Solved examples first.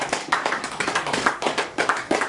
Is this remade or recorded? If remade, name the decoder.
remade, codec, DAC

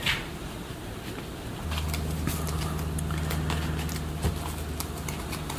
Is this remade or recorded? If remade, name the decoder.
remade, vocoder, BigVGAN v2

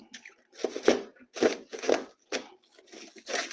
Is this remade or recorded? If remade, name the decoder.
recorded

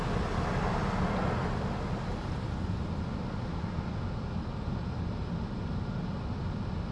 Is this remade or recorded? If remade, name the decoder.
recorded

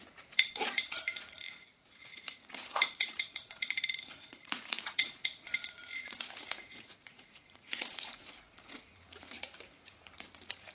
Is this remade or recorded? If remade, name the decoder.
remade, vocoder, Vocos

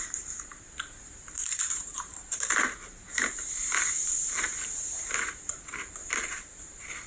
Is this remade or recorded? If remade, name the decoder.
remade, vocoder, BigVGAN v2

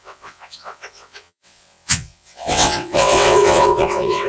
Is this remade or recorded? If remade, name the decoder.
remade, vocoder, WaveNeXt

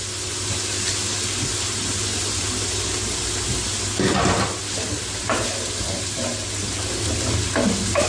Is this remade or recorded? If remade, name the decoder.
recorded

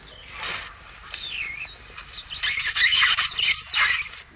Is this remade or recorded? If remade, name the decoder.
recorded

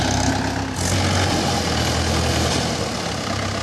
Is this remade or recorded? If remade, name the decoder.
recorded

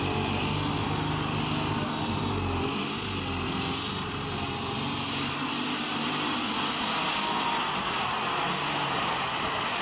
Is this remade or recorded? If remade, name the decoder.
recorded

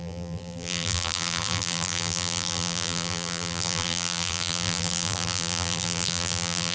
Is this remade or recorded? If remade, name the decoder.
remade, vocoder, BigVGAN v2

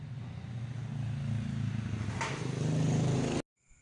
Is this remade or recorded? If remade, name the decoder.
recorded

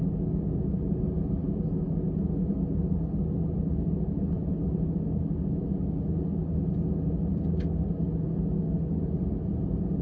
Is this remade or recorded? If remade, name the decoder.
recorded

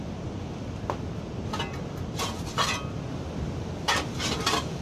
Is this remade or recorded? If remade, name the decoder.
recorded